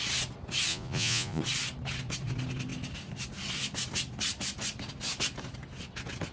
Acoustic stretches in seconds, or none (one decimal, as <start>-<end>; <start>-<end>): 0.0-0.7; 1.4-6.3